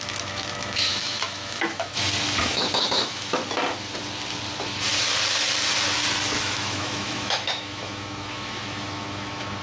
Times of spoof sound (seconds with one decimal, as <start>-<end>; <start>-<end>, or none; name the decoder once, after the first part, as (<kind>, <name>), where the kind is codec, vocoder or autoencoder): 0.0-1.9 (autoencoder, DAC-VAE); 2.4-3.4; 6.4-9.6